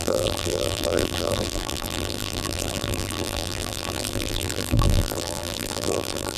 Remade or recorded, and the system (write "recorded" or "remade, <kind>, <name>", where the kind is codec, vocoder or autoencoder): remade, vocoder, BigVGAN v2